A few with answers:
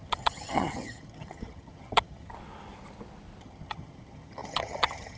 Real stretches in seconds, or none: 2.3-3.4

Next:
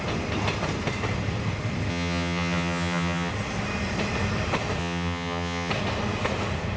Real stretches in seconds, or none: 0.0-1.9; 3.3-4.8; 5.7-6.8

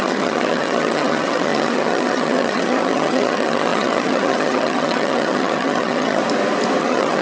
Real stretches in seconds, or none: 6.2-6.8

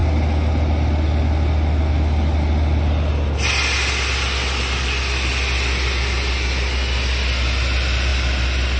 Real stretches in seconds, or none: 0.0-8.8